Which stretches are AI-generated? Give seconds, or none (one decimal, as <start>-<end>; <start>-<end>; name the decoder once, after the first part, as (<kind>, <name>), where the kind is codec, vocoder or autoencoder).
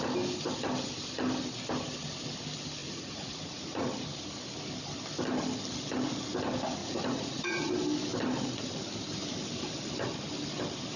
2.8-3.9 (vocoder, Vocos); 6.8-7.7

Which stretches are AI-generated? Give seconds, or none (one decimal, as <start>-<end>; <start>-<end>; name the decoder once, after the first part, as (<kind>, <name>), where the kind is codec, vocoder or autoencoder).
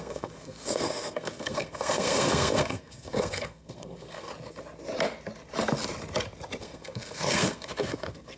0.0-4.3 (codec, SNAC); 6.6-8.4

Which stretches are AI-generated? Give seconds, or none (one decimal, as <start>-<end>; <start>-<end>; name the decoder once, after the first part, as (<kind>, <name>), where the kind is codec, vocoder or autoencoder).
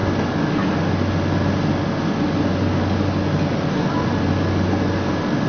none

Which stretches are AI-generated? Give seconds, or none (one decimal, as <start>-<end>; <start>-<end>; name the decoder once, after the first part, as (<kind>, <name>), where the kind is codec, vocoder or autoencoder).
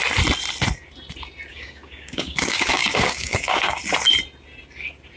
1.5-3.8 (codec, DAC)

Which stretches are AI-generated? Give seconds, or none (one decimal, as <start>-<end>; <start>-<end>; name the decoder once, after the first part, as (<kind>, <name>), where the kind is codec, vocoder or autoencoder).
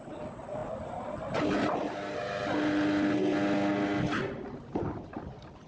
none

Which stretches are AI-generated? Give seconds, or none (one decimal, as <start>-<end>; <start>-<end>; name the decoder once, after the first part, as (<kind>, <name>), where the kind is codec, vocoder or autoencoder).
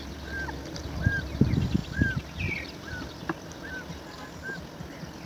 none